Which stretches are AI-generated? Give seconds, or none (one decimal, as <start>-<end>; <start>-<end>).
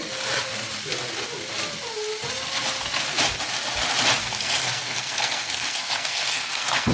4.2-6.9